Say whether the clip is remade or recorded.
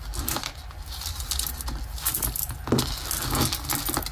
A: recorded